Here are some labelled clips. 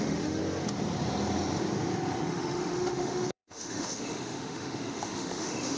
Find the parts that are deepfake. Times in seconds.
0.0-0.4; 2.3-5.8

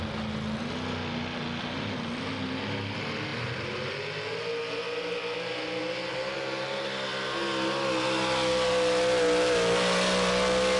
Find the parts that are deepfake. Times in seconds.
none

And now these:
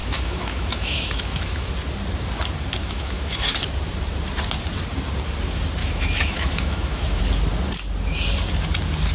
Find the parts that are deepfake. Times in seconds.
0.0-1.7; 2.8-3.5; 5.8-7.2